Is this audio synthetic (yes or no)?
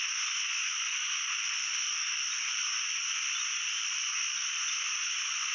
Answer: no